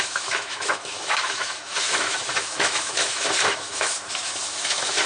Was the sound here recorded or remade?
remade